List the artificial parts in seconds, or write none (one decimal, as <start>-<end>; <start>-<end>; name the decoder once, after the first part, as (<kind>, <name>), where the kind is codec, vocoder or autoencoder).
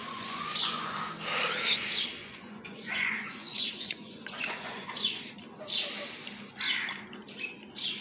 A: 0.0-1.0 (vocoder, Vocos); 2.2-5.2